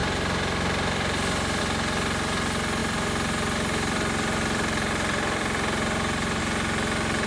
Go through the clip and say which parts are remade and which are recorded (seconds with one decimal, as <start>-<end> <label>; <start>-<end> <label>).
0.0-1.6 remade; 1.6-2.8 recorded; 2.8-6.4 remade; 6.4-7.3 recorded